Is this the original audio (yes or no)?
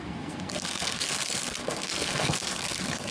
no